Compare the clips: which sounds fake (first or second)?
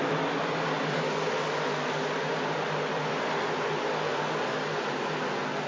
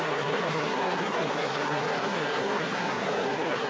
second